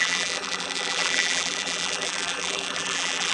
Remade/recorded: remade